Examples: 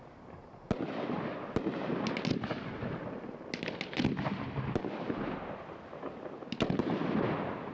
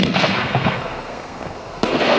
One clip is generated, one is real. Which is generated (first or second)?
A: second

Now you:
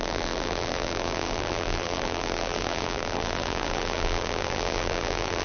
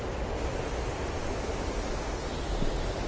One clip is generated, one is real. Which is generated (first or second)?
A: first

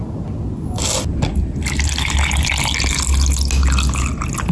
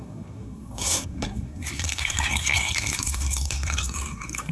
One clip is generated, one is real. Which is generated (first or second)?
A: second